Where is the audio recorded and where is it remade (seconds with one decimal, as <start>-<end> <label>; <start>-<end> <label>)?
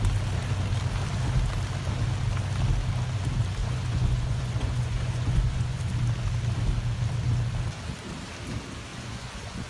0.0-3.6 recorded; 3.6-5.8 remade; 5.8-8.9 recorded; 8.9-9.7 remade